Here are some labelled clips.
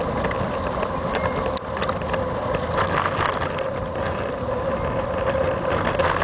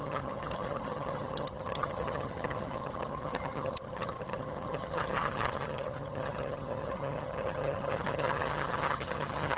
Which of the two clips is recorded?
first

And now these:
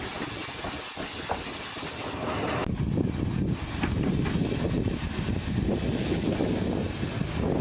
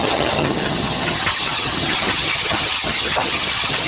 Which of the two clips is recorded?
first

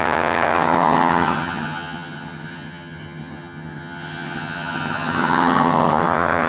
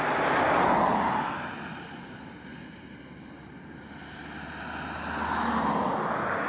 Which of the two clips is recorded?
second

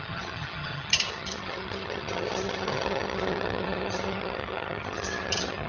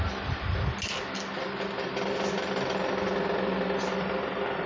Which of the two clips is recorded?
second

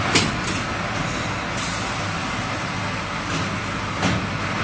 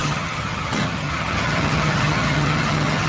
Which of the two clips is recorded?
first